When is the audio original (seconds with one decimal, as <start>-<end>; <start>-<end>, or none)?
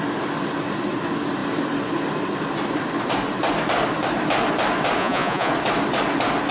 0.0-5.0; 5.5-6.5